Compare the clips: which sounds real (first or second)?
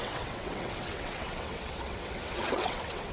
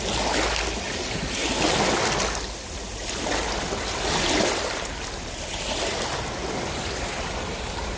second